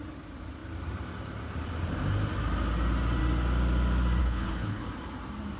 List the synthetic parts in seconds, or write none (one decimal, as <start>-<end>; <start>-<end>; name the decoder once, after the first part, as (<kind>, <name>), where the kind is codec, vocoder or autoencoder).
4.2-4.8 (codec, HILCodec)